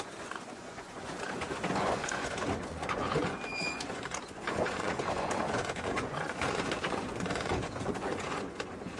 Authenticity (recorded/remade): remade